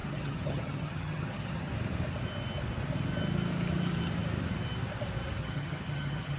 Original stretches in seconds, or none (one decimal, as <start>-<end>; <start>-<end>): 1.7-5.4